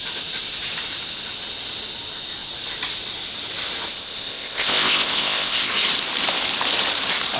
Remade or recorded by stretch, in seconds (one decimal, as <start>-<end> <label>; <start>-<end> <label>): 0.0-3.9 recorded; 3.9-5.7 remade; 5.7-7.4 recorded